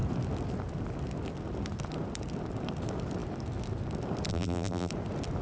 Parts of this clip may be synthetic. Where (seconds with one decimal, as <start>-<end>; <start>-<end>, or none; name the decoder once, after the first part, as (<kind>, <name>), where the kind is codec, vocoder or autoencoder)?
4.3-4.9 (vocoder, BigVGAN v2)